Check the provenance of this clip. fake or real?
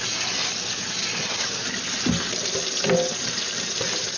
real